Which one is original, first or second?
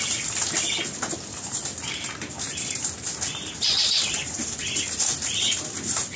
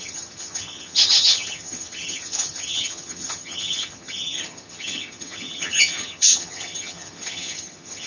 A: first